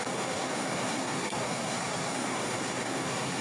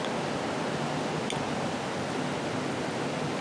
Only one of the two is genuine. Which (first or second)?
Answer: second